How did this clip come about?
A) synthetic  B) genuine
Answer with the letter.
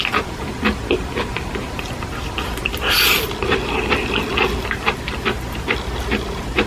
B